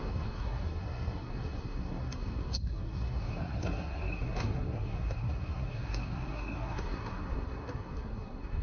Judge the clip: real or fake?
fake